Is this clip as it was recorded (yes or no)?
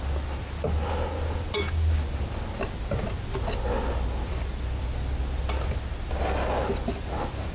yes